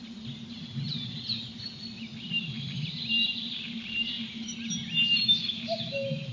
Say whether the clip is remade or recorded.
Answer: recorded